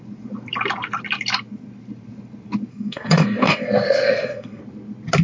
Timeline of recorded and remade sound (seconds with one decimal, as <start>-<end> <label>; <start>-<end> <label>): 0.0-2.7 recorded; 2.7-4.6 remade; 4.6-5.2 recorded